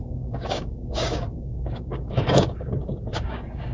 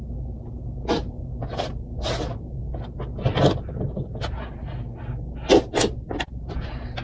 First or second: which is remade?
first